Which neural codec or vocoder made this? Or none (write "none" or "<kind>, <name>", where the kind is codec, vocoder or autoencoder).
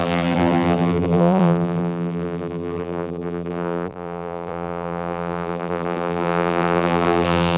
vocoder, BigVGAN v2